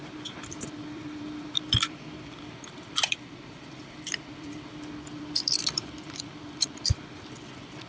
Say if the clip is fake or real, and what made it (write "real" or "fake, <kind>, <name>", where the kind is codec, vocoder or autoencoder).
fake, vocoder, BigVGAN v2